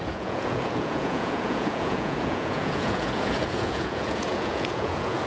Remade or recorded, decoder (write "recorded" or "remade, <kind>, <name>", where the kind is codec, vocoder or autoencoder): remade, vocoder, Vocos